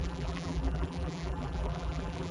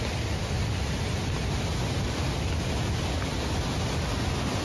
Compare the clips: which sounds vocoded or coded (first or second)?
first